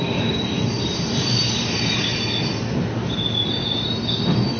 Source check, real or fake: real